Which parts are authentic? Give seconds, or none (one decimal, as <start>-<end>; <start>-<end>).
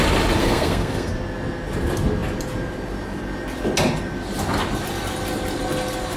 0.0-0.4; 1.1-6.2